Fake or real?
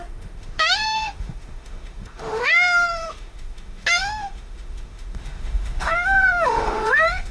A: fake